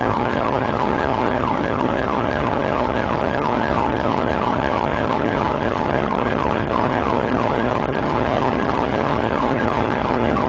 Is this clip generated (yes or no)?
yes